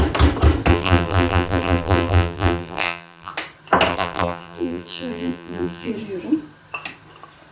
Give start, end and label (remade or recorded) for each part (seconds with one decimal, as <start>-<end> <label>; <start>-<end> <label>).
0.0-0.7 recorded; 0.7-3.3 remade; 3.3-3.9 recorded; 3.9-5.9 remade; 5.9-7.5 recorded